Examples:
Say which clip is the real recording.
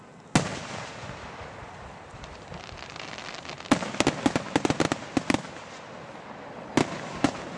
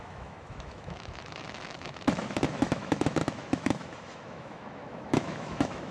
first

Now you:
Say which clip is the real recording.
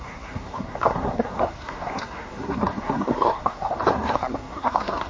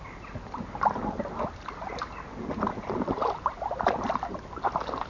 second